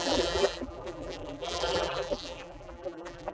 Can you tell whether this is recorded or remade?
remade